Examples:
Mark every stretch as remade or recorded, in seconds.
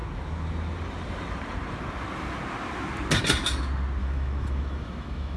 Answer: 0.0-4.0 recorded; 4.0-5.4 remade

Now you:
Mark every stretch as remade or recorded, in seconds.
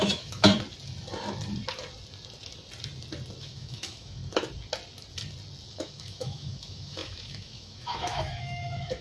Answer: 0.0-0.5 remade; 0.5-3.4 recorded; 3.4-4.2 remade; 4.2-5.7 recorded; 5.7-9.0 remade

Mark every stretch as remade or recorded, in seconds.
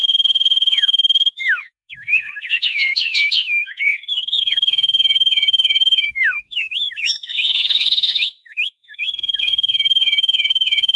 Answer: 0.0-11.0 remade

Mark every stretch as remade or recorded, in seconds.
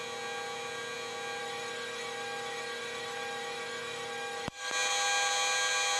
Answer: 0.0-1.4 recorded; 1.4-4.7 remade; 4.7-6.0 recorded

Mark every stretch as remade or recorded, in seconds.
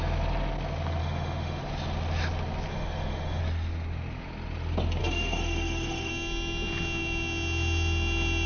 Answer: 0.0-1.0 recorded; 1.0-1.6 remade; 1.6-2.7 recorded; 2.7-3.4 remade; 3.4-5.0 recorded; 5.0-6.1 remade; 6.1-8.5 recorded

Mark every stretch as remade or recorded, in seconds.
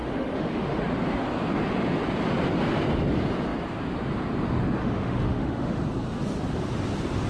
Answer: 0.0-0.8 remade; 0.8-4.8 recorded; 4.8-5.8 remade; 5.8-7.3 recorded